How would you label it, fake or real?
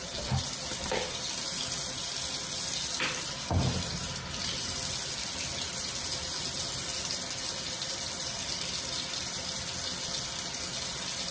real